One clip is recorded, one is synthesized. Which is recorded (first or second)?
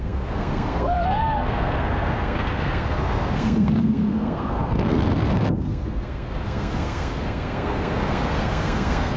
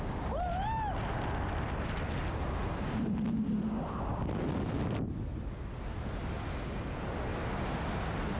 second